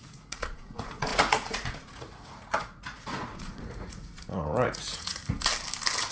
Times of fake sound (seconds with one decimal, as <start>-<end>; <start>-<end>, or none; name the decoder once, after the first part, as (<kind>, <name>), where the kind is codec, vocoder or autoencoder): 0.0-5.2 (vocoder, Vocos)